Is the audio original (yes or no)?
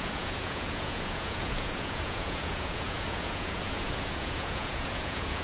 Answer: no